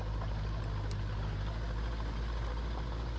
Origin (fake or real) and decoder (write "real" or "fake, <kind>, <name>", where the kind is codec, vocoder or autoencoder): real